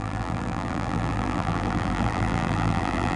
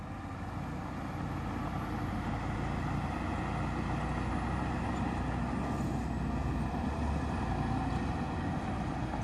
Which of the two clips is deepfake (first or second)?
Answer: first